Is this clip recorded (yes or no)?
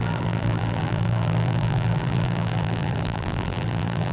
no